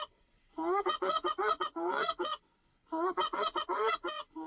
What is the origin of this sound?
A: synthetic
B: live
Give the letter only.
A